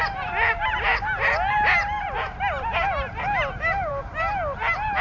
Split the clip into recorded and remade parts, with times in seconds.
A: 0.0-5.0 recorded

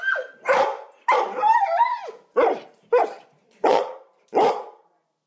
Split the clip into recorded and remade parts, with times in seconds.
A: 0.0-3.4 recorded; 3.4-4.0 remade; 4.0-5.3 recorded

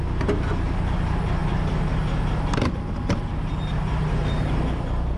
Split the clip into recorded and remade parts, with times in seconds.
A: 0.0-5.2 recorded

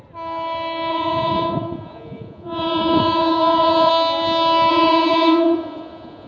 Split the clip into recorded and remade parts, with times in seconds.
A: 0.0-0.9 recorded; 0.9-3.9 remade; 3.9-4.7 recorded; 4.7-6.3 remade

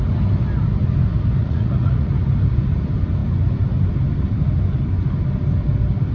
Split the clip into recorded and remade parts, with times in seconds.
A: 0.0-1.4 recorded; 1.4-2.1 remade; 2.1-6.1 recorded